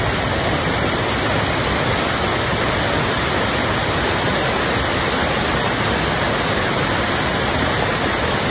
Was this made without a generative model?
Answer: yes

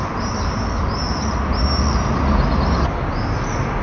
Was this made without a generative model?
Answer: yes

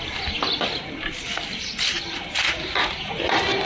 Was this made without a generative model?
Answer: yes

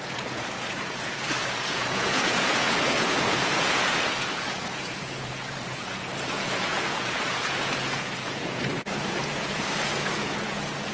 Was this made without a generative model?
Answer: no